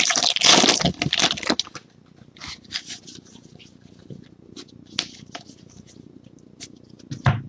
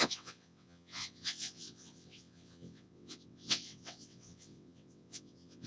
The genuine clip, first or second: first